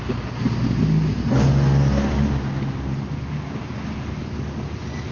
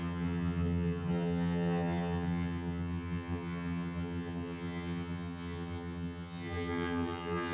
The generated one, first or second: second